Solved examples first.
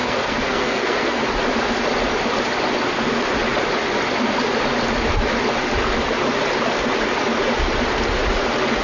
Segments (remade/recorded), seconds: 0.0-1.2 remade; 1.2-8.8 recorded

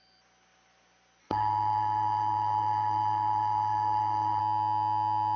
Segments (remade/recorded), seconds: 0.0-1.2 recorded; 1.2-4.4 remade; 4.4-5.4 recorded

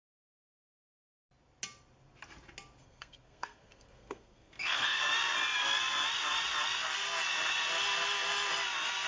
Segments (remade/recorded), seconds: 0.0-2.8 recorded; 2.8-5.0 remade; 5.0-9.1 recorded

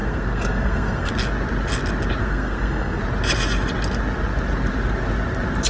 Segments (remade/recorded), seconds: 0.0-1.1 remade; 1.1-2.2 recorded; 2.2-3.0 remade; 3.0-5.7 recorded

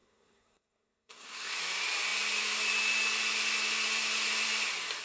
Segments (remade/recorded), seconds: 0.0-1.6 remade; 1.6-5.0 recorded